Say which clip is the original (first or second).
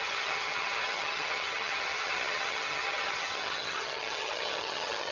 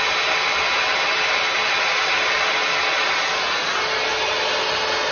second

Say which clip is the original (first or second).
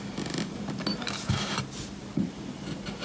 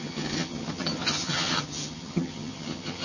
first